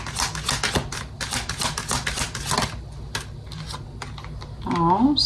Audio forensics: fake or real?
real